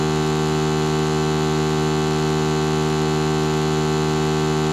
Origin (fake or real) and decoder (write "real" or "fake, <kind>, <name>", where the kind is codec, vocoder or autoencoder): fake, vocoder, BigVGAN v2